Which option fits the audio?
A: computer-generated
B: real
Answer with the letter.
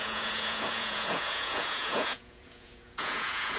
A